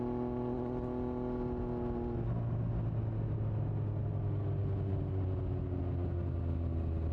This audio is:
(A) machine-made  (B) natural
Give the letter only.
B